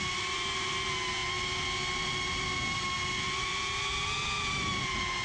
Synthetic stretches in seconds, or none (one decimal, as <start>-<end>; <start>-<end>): none